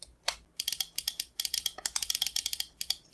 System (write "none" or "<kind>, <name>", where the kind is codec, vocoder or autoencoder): none